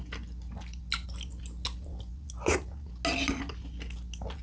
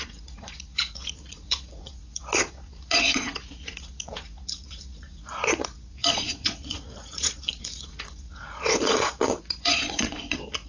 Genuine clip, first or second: first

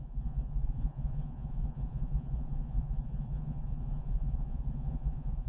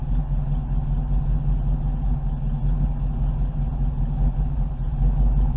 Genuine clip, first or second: second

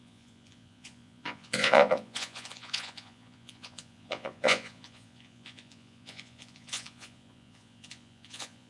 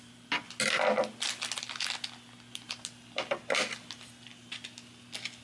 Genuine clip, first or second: second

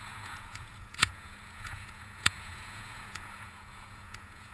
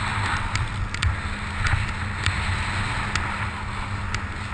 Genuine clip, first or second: second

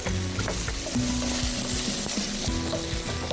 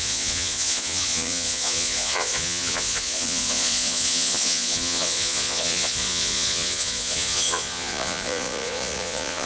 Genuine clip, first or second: first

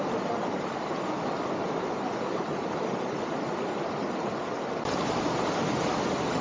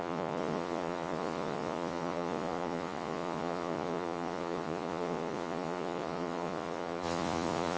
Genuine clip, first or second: first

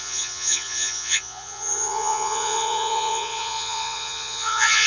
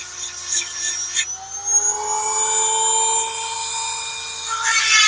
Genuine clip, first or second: second